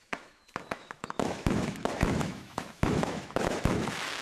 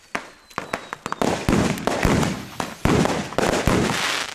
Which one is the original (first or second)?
second